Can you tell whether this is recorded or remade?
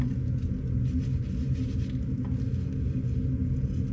recorded